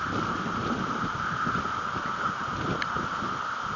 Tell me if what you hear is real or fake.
real